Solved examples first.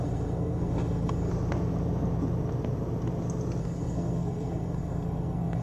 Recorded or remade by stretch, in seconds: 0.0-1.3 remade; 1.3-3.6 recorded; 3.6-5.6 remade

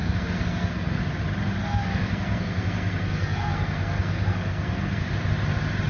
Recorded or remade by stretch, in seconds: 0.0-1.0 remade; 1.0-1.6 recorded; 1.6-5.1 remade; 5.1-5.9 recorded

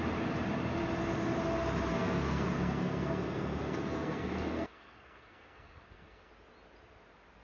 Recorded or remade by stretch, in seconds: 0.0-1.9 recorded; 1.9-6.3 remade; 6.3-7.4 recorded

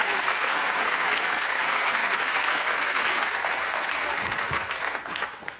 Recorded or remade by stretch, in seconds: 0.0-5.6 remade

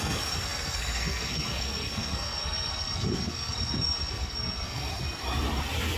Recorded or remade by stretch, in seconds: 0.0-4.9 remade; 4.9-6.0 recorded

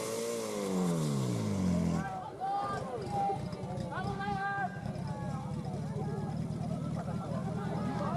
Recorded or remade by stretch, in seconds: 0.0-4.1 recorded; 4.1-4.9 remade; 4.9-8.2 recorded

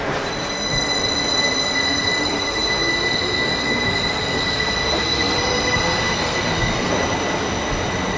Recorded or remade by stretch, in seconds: 0.0-2.3 recorded; 2.3-2.9 remade; 2.9-3.6 recorded; 3.6-6.9 remade; 6.9-8.2 recorded